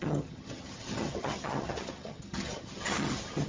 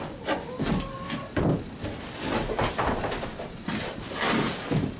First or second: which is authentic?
second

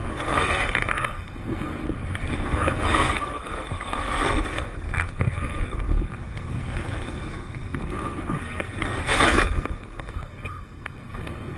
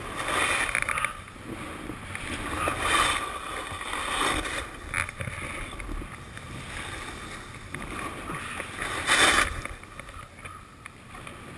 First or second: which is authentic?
second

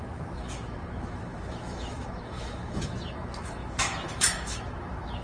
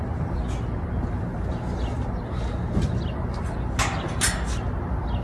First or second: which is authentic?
second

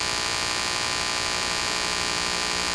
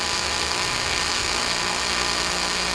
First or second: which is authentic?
first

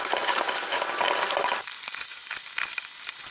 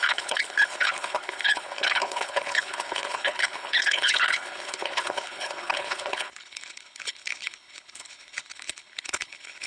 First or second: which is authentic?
first